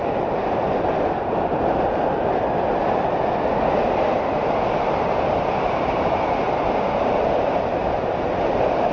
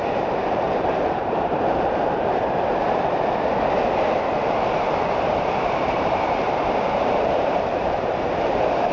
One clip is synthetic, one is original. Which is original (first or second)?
first